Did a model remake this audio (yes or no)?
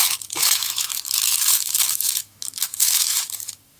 yes